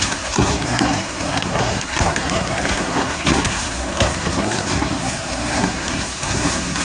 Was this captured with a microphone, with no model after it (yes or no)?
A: no